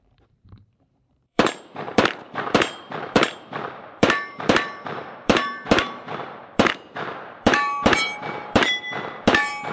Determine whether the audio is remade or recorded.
remade